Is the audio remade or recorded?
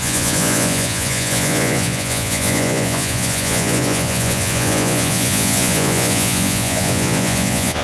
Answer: remade